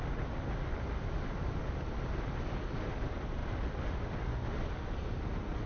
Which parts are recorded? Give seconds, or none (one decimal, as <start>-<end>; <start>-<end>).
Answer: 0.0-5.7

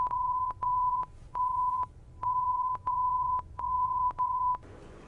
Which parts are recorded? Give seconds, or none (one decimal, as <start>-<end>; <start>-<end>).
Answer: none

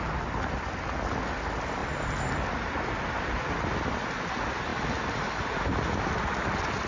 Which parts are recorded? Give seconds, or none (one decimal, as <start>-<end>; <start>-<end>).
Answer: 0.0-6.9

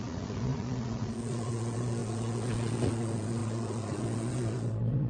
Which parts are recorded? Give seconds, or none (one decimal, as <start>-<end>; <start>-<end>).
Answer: none

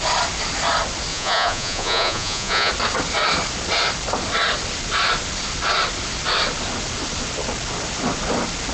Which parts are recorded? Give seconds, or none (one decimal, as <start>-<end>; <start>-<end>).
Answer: 0.0-1.1; 2.7-8.7

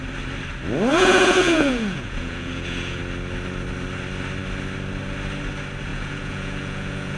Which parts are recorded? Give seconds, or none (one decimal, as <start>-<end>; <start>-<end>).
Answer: 0.0-0.9; 3.0-5.9